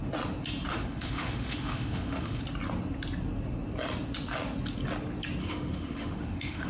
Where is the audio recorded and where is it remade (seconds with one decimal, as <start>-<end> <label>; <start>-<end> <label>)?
0.0-0.7 recorded; 0.7-2.4 remade; 2.4-5.4 recorded; 5.4-6.7 remade